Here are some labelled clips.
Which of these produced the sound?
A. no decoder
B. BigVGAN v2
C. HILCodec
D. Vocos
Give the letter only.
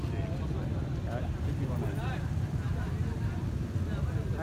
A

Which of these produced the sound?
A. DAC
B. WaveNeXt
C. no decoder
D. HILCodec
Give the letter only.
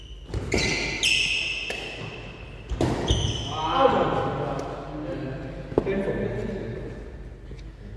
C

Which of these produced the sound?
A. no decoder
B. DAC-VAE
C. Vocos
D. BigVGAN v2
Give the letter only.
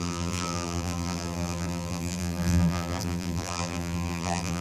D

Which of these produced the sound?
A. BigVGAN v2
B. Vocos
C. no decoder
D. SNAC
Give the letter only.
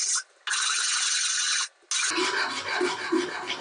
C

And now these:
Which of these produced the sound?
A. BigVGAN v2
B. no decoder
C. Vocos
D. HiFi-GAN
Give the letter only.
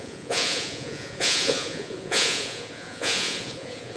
C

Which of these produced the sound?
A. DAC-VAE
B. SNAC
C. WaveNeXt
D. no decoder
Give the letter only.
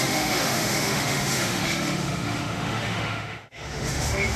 A